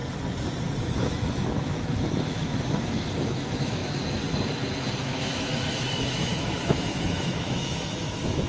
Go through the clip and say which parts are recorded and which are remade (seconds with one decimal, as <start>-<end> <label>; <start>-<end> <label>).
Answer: 0.0-0.8 recorded; 0.8-3.8 remade; 3.8-5.0 recorded; 5.0-8.5 remade